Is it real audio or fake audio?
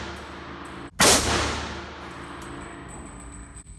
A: real